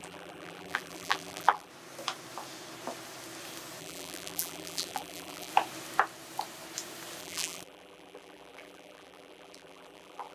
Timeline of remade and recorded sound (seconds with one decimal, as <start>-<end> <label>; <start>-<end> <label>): 0.0-1.7 remade; 1.7-3.8 recorded; 3.8-5.5 remade; 5.5-7.2 recorded; 7.2-10.3 remade